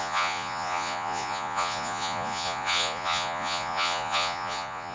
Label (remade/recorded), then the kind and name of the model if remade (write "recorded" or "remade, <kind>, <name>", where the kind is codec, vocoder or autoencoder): remade, vocoder, Vocos